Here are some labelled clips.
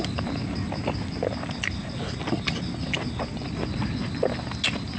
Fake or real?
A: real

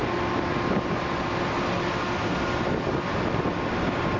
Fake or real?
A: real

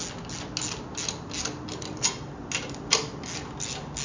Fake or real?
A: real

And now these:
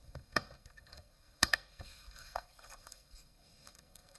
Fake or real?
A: fake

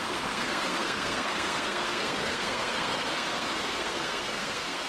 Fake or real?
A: fake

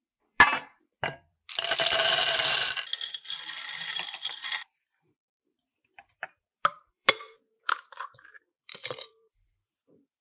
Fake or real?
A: fake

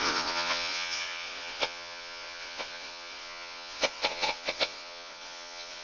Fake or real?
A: fake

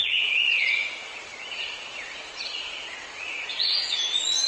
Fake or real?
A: fake